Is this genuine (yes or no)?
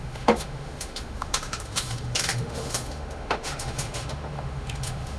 no